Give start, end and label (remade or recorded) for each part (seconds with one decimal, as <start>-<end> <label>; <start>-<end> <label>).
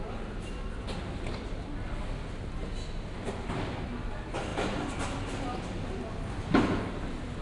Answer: 0.0-7.4 recorded